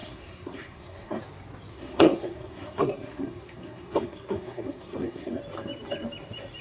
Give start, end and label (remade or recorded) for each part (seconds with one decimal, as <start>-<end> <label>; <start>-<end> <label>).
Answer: 0.0-1.2 remade; 1.2-1.7 recorded; 1.7-5.4 remade; 5.4-6.6 recorded